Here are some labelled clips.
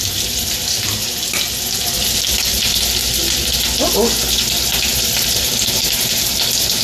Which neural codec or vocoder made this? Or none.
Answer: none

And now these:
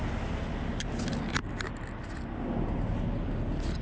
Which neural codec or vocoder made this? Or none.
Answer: none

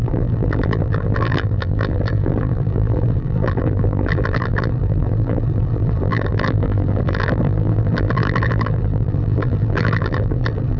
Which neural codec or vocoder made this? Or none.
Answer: vocoder, BigVGAN v2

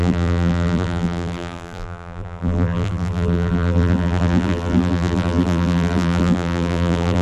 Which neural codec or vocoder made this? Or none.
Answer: vocoder, BigVGAN v2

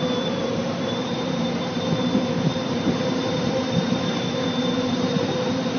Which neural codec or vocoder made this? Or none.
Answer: vocoder, BigVGAN v2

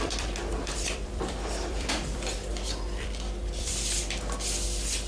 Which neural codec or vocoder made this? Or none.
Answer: vocoder, BigVGAN v2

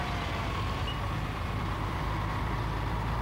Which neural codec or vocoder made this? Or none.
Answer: vocoder, BigVGAN v2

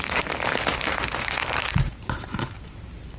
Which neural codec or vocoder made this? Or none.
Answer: vocoder, BigVGAN v2